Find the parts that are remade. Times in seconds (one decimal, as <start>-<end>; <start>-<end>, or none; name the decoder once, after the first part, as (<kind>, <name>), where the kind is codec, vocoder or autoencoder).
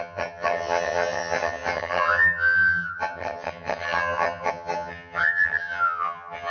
0.0-6.5 (vocoder, HiFi-GAN)